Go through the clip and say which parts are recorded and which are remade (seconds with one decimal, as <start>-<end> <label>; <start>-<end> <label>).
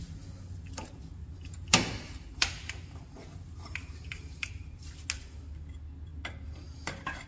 0.0-1.2 recorded; 1.2-5.0 remade; 5.0-6.1 recorded; 6.1-7.3 remade